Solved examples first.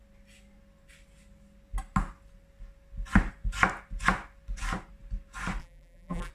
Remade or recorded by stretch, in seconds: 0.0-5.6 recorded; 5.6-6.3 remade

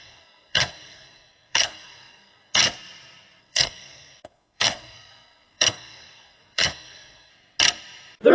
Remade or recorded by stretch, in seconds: 0.0-2.6 remade; 2.6-3.4 recorded; 3.4-7.3 remade; 7.3-8.3 recorded

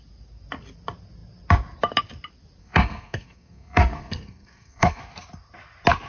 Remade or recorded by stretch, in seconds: 0.0-2.6 recorded; 2.6-5.0 remade; 5.0-6.1 recorded